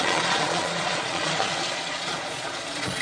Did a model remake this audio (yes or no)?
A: yes